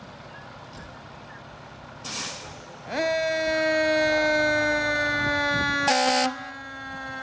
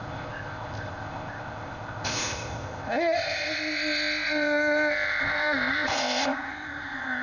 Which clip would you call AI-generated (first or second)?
second